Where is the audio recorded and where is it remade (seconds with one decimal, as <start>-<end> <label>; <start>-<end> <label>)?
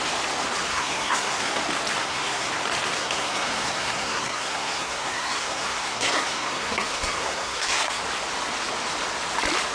0.0-0.7 recorded; 0.7-1.6 remade; 1.6-2.0 recorded; 2.0-2.5 remade; 2.5-3.0 recorded; 3.0-8.0 remade; 8.0-9.7 recorded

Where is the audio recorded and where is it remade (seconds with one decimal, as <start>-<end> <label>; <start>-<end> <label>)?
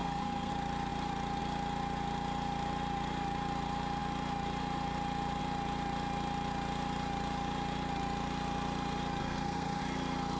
0.0-0.5 remade; 0.5-9.2 recorded; 9.2-9.8 remade; 9.8-10.4 recorded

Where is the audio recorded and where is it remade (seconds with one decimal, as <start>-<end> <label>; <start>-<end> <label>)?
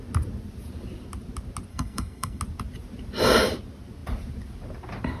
0.0-1.7 recorded; 1.7-2.4 remade; 2.4-5.2 recorded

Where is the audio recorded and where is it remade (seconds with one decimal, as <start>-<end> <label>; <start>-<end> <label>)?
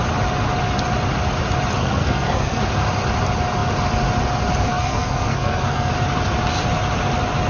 0.0-1.8 recorded; 1.8-2.6 remade; 2.6-4.7 recorded; 4.7-5.9 remade; 5.9-7.5 recorded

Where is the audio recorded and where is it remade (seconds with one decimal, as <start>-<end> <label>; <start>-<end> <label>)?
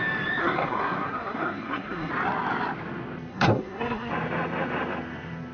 0.0-0.4 recorded; 0.4-2.1 remade; 2.1-3.3 recorded; 3.3-4.1 remade; 4.1-5.5 recorded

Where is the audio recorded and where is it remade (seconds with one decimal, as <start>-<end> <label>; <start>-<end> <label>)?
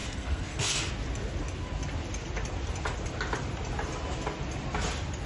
0.0-0.9 remade; 0.9-5.3 recorded